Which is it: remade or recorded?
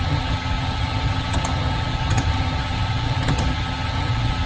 remade